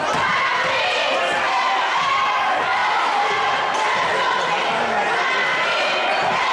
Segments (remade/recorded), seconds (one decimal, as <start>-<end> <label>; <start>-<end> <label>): 0.0-6.5 recorded